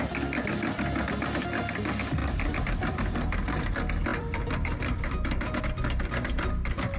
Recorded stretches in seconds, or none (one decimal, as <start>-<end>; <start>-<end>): 0.0-2.2; 3.6-4.1; 5.6-7.0